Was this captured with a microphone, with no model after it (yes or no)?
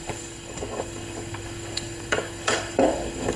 no